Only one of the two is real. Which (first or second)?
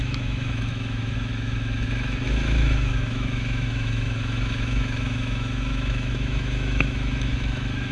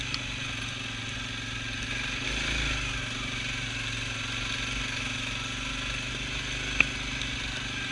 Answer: second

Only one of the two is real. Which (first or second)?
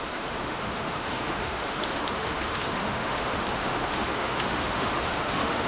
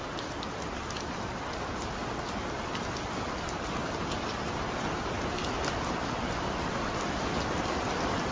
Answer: second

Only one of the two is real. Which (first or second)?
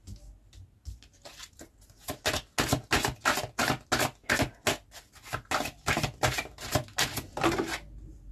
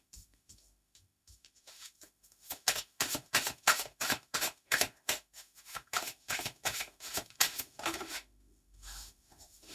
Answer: first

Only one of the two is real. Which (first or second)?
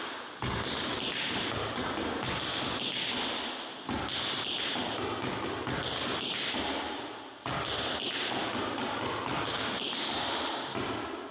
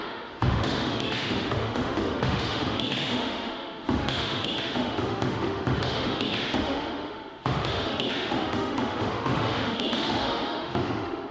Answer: first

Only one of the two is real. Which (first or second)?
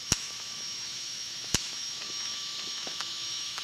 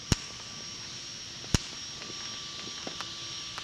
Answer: second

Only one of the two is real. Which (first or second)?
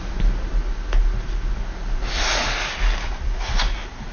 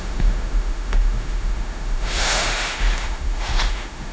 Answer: first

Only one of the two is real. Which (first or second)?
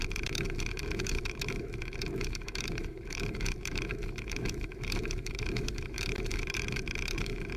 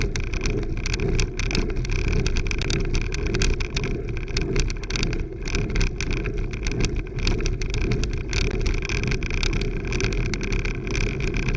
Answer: second